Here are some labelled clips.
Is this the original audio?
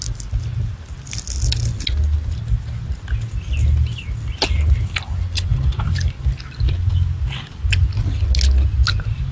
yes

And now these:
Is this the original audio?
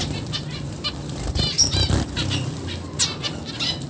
yes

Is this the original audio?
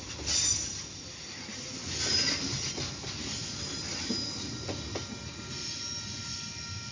yes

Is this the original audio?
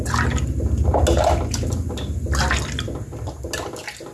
yes